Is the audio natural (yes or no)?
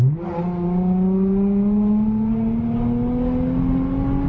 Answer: yes